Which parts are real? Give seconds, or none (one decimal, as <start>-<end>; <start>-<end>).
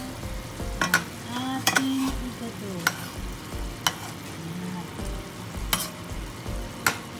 0.0-1.6; 2.1-7.2